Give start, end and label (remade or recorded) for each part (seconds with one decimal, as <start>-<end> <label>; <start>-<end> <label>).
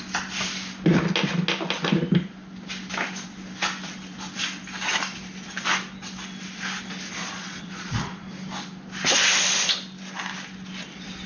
0.0-7.2 recorded; 7.2-8.3 remade; 8.3-11.3 recorded